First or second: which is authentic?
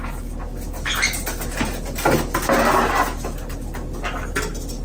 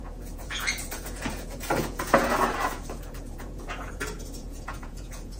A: first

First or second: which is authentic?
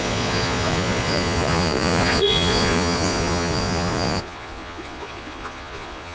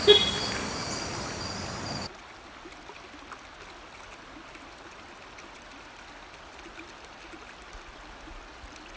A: second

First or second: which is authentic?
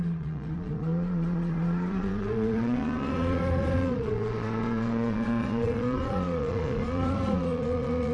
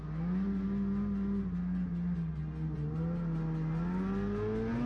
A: second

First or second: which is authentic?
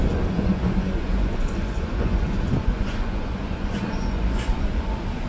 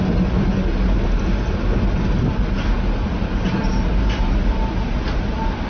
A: second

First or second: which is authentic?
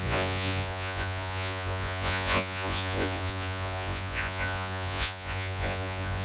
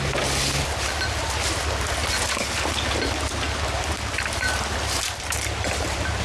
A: second